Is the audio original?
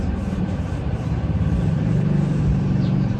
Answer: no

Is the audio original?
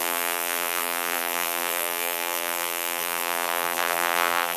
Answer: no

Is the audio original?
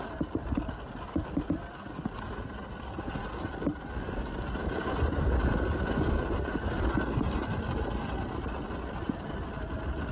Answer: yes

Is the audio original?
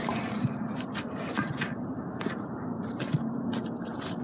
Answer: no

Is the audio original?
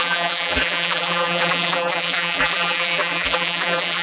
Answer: no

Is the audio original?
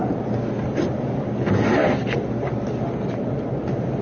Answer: yes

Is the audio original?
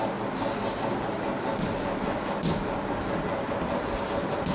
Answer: yes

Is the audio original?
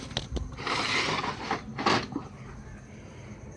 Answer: yes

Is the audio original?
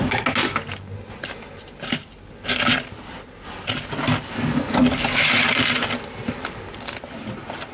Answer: yes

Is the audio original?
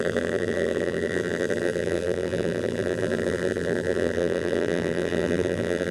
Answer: no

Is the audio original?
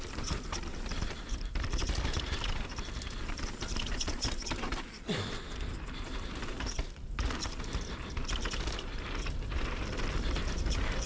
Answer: no